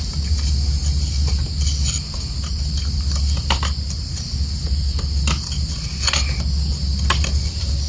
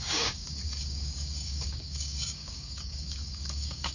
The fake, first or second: second